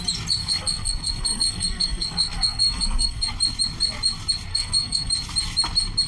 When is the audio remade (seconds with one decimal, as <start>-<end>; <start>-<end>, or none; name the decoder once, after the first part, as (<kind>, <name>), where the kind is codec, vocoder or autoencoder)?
0.4-3.3 (codec, SNAC); 4.5-5.1